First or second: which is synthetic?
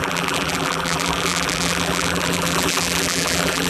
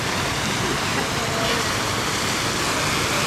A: first